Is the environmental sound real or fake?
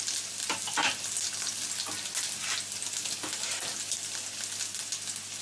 real